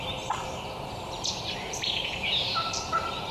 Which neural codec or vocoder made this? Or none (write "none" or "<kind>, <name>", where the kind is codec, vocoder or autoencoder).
vocoder, BigVGAN v2